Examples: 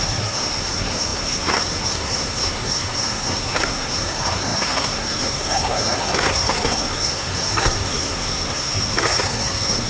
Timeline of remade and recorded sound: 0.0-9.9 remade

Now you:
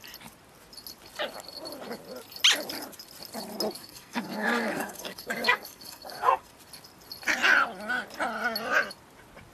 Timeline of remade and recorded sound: 0.0-3.8 recorded; 3.8-6.5 remade; 6.5-9.5 recorded

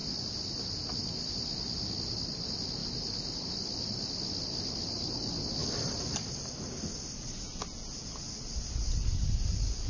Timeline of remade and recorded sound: 0.0-9.9 recorded

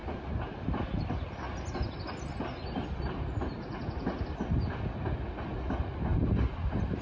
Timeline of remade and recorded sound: 0.0-7.0 recorded

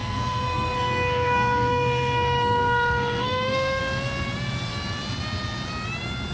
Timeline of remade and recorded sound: 0.0-3.8 remade; 3.8-6.3 recorded

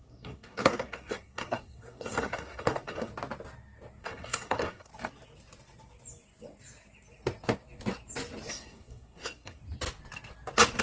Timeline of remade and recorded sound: 0.0-3.1 remade; 3.1-4.0 recorded; 4.0-4.9 remade; 4.9-8.5 recorded; 8.5-9.6 remade; 9.6-10.8 recorded